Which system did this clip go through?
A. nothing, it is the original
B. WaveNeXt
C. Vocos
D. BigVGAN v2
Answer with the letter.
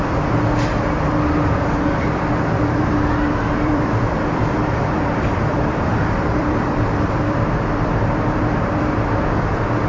D